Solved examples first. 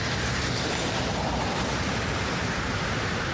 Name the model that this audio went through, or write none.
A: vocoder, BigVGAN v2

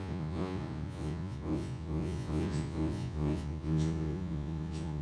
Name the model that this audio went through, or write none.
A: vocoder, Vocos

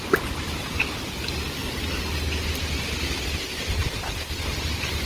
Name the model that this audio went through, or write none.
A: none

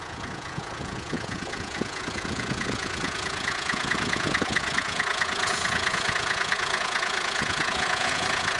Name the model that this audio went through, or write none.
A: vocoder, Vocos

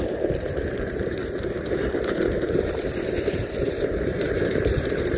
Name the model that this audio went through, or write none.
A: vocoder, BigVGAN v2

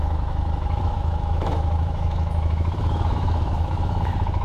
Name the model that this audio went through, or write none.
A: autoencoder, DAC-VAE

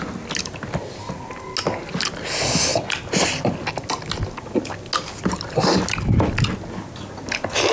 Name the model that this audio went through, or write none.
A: none